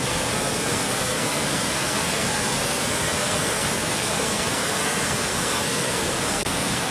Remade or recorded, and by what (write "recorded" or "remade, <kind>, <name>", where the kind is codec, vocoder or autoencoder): remade, codec, SNAC